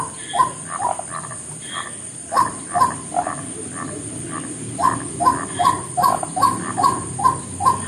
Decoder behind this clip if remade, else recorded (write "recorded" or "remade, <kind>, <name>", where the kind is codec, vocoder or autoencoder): recorded